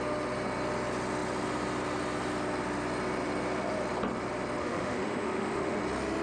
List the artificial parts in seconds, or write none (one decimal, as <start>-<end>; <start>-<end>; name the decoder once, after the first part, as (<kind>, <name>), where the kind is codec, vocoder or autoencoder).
4.6-5.8 (autoencoder, DAC-VAE)